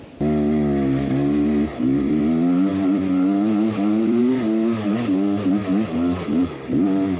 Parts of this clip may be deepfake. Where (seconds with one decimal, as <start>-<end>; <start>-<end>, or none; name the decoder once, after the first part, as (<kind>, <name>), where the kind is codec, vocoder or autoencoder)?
1.7-2.2 (vocoder, BigVGAN v2); 2.7-4.2

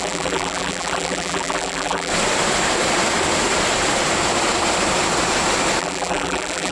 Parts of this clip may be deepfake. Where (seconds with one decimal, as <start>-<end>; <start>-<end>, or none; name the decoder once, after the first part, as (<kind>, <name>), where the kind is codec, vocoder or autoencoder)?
0.0-2.1 (vocoder, BigVGAN v2); 5.8-6.7

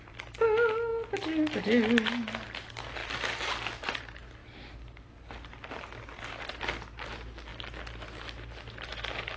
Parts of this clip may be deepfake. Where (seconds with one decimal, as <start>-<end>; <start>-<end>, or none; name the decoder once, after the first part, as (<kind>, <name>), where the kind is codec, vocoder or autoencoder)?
none